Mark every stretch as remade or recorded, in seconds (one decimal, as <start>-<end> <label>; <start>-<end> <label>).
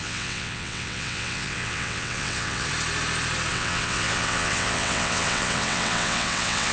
0.0-2.7 remade; 2.7-3.5 recorded; 3.5-6.7 remade